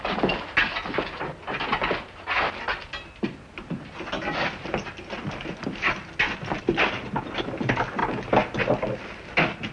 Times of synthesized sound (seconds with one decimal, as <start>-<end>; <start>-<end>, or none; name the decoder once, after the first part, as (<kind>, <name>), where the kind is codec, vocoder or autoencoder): none